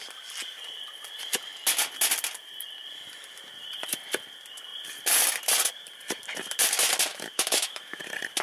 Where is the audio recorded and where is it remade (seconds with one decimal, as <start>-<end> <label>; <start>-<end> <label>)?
0.0-7.1 recorded; 7.1-8.0 remade; 8.0-8.4 recorded